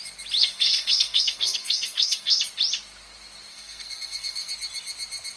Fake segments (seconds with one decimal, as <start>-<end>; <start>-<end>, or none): 0.4-2.4; 3.5-4.5